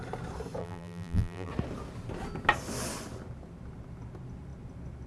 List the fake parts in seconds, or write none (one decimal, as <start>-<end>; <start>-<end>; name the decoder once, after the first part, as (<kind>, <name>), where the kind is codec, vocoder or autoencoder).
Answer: 0.6-1.5 (vocoder, BigVGAN v2)